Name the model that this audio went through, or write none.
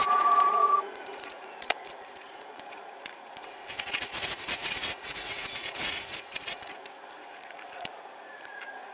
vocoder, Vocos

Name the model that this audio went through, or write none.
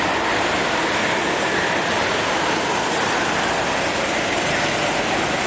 none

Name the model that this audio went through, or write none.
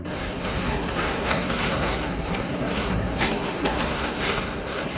codec, SNAC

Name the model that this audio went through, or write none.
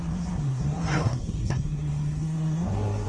codec, SNAC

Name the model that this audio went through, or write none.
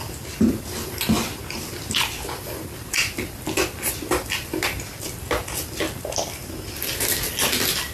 none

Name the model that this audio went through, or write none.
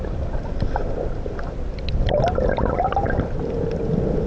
none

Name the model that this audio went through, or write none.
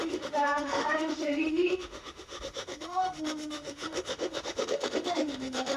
autoencoder, DAC-VAE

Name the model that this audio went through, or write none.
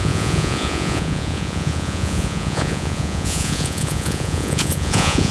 vocoder, Vocos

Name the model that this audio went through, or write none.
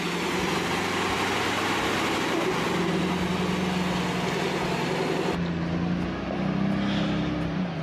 none